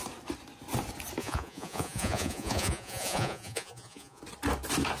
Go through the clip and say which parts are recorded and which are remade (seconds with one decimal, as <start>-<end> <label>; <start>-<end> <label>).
0.0-1.2 recorded; 1.2-4.2 remade; 4.2-5.0 recorded